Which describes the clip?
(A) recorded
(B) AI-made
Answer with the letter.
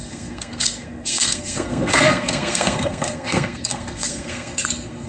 B